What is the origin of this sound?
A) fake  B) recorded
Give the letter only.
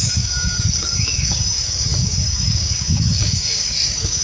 A